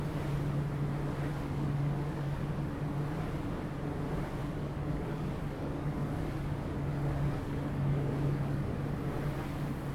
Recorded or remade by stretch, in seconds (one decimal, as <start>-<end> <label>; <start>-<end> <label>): 0.0-1.3 recorded; 1.3-2.4 remade; 2.4-4.4 recorded; 4.4-8.9 remade; 8.9-9.9 recorded